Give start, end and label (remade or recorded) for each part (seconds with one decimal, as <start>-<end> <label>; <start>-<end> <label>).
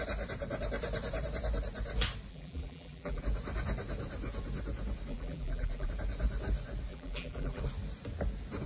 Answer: 0.0-2.3 recorded; 2.3-3.2 remade; 3.2-5.1 recorded; 5.1-5.9 remade; 5.9-6.9 recorded; 6.9-7.6 remade; 7.6-8.7 recorded